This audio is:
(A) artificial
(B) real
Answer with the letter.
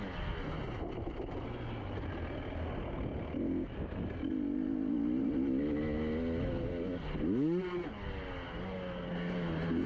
B